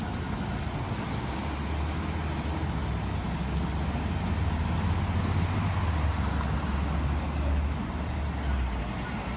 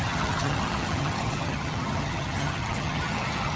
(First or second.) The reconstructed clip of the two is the second